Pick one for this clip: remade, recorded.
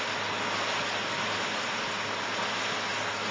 recorded